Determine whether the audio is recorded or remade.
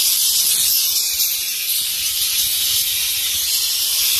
recorded